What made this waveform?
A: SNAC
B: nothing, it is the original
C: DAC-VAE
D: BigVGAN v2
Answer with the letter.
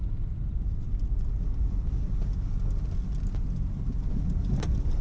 B